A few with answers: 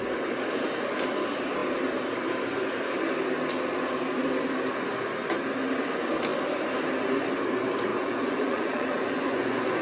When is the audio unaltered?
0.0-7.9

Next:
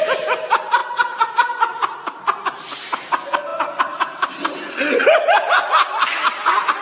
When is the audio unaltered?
0.0-6.8

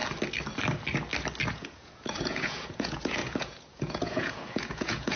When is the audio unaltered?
0.0-1.5

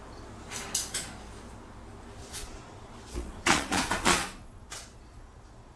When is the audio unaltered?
0.0-2.2

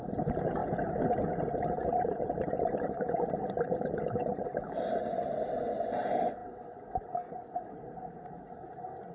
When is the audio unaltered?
0.0-0.6; 3.1-4.2; 5.3-9.1

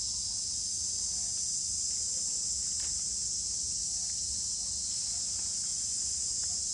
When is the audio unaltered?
0.0-5.7

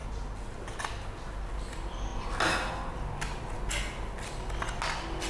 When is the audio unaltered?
0.0-5.3

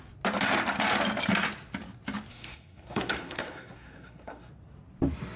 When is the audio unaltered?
0.0-2.3; 4.5-5.4